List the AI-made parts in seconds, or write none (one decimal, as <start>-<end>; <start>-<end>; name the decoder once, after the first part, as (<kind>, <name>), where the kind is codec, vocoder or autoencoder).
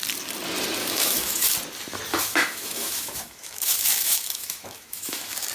0.8-1.5 (autoencoder, DAC-VAE); 2.1-5.5